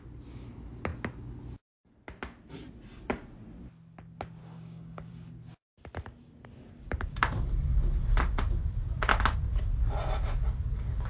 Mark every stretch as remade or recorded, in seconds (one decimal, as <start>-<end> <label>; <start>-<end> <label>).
0.0-4.4 recorded; 4.4-5.1 remade; 5.1-11.1 recorded